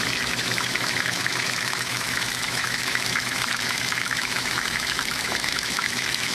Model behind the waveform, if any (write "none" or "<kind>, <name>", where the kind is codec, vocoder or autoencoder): autoencoder, DAC-VAE